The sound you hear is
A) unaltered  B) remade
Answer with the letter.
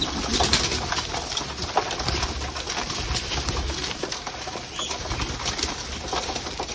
A